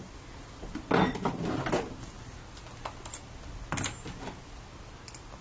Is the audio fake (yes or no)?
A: no